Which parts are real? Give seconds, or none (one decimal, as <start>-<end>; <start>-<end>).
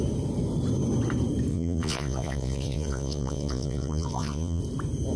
0.0-1.5; 4.6-5.2